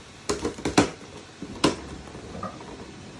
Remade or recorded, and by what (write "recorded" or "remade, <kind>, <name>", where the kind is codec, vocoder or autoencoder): recorded